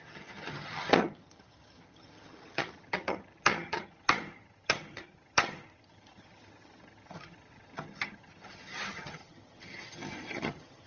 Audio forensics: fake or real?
fake